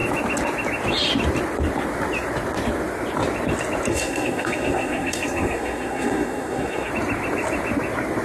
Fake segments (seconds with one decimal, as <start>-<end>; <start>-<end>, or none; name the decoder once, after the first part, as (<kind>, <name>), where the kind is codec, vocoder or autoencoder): 3.9-6.9 (codec, SNAC)